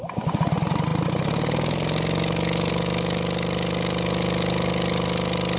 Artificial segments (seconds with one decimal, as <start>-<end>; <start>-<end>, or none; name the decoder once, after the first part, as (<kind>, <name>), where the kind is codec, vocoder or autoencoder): none